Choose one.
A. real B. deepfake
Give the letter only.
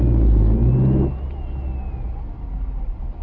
A